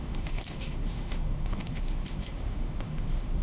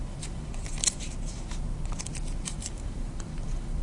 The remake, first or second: first